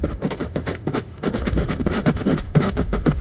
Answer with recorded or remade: remade